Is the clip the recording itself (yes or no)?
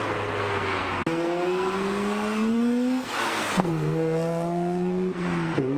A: no